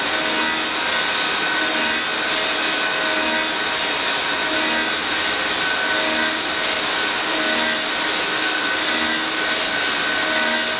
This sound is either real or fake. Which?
real